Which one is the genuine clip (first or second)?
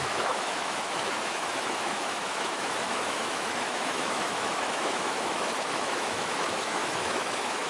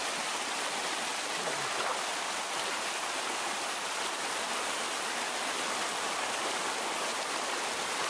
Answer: second